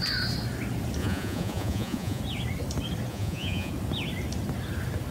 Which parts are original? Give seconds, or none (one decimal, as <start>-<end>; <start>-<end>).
0.0-1.0; 2.2-3.1; 3.7-5.1